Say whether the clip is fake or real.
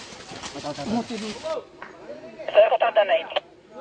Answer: real